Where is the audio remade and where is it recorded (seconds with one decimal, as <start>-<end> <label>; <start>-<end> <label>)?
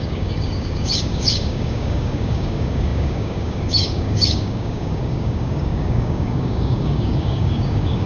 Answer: 0.0-8.1 remade